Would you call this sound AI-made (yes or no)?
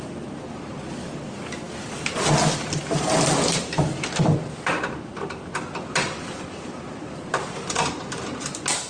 no